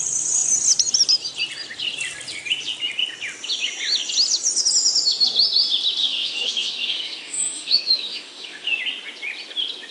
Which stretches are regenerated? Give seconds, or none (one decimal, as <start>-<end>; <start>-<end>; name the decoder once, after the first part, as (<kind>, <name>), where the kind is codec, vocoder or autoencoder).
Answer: 6.0-8.8 (autoencoder, DAC-VAE)